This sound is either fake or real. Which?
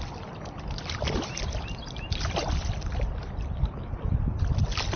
real